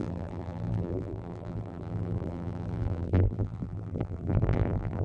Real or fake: fake